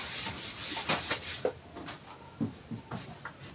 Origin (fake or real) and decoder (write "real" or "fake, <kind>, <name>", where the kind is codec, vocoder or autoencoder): real